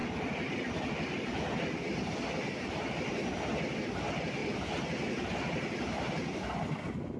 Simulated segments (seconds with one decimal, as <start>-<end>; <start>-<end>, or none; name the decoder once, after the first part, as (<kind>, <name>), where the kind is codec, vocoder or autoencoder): none